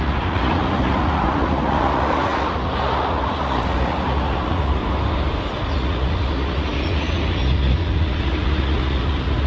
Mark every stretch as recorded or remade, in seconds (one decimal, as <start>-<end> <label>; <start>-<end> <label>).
0.0-4.8 remade; 4.8-5.7 recorded; 5.7-9.5 remade